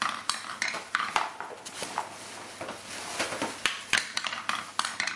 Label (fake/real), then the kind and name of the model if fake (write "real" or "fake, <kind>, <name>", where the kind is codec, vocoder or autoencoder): real